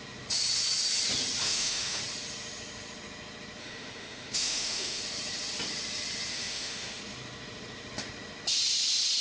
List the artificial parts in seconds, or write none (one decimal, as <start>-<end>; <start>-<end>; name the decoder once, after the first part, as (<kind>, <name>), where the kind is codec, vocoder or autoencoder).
1.4-2.0 (autoencoder, DAC-VAE); 3.6-5.0; 6.3-7.0